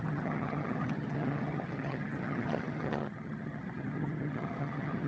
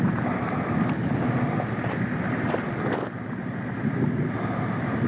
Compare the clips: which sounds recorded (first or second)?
second